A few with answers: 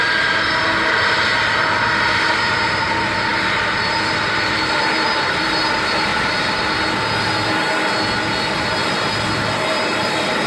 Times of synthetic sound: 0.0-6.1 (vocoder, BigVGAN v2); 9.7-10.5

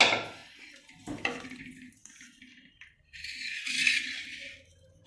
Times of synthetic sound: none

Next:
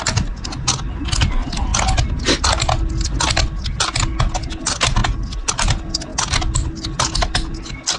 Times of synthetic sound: none